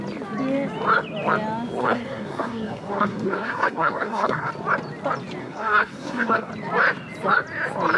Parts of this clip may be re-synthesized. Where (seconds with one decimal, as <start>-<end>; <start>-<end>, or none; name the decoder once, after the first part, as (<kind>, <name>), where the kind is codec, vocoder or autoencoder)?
1.8-4.5 (codec, SNAC); 5.4-6.5